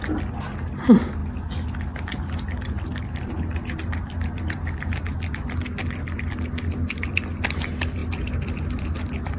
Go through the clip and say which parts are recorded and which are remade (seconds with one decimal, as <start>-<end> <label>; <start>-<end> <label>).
0.0-9.4 recorded